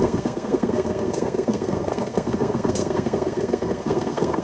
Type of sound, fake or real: fake